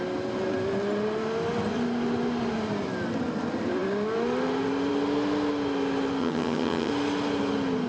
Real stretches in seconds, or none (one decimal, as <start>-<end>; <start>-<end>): 0.0-6.2; 6.9-7.9